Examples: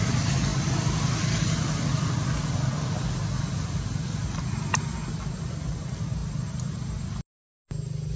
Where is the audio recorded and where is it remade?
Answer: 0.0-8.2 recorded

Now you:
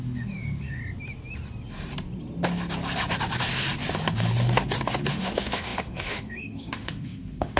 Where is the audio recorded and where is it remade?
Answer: 0.0-0.8 remade; 0.8-5.1 recorded; 5.1-7.6 remade

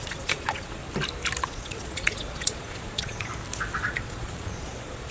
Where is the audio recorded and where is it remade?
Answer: 0.0-0.8 remade; 0.8-1.4 recorded; 1.4-3.3 remade; 3.3-3.8 recorded; 3.8-5.1 remade

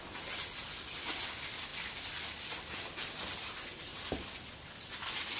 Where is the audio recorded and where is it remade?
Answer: 0.0-5.4 recorded

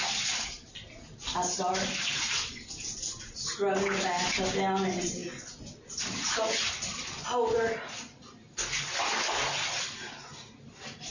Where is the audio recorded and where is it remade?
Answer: 0.0-11.1 recorded